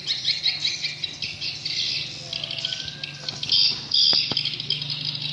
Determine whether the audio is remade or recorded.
recorded